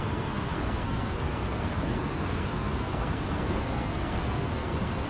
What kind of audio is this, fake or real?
fake